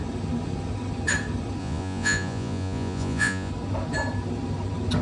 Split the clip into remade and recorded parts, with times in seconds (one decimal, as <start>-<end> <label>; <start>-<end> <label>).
0.0-1.6 recorded; 1.6-3.5 remade; 3.5-5.0 recorded